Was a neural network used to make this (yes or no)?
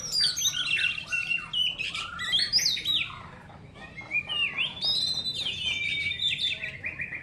no